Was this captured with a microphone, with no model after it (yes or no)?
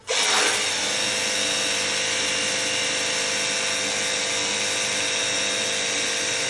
yes